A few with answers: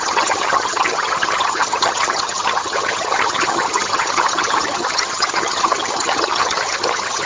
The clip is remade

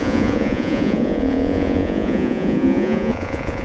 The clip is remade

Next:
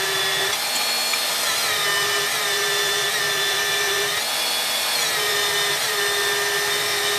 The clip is recorded